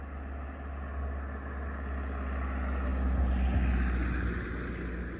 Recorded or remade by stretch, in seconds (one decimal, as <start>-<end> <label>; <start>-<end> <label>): 0.0-5.2 recorded